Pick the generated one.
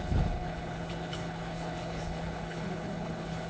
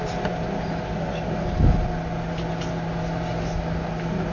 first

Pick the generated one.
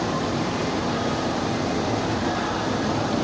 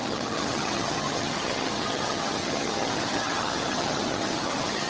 second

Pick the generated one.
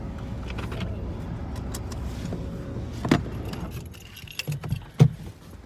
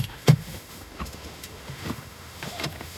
second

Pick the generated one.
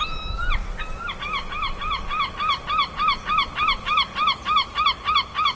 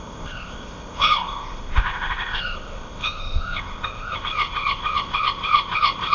second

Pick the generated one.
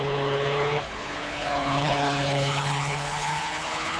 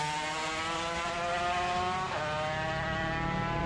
first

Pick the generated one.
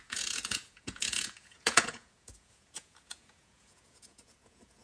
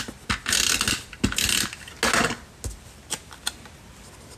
first